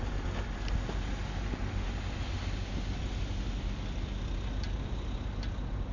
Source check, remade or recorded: recorded